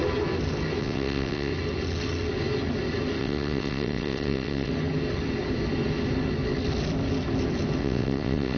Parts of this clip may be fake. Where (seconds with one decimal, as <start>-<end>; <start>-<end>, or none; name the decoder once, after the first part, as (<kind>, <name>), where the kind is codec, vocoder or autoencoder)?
0.8-1.5 (vocoder, WaveNeXt); 3.2-4.7; 7.8-8.6